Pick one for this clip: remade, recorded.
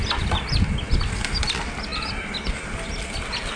recorded